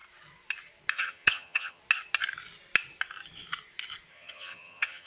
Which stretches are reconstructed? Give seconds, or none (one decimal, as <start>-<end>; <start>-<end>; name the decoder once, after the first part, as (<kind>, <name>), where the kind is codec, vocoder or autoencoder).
0.9-1.8 (vocoder, HiFi-GAN); 4.1-5.1